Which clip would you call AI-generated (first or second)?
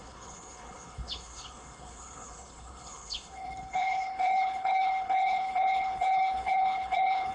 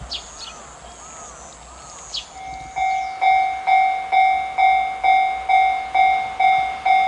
first